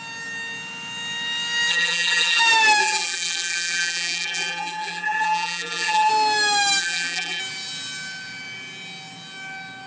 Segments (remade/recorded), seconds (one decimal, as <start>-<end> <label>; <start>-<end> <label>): 0.0-1.7 recorded; 1.7-2.4 remade; 2.4-2.8 recorded; 2.8-6.1 remade; 6.1-6.8 recorded; 6.8-7.4 remade; 7.4-9.9 recorded